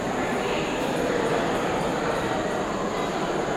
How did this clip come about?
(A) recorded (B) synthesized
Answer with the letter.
A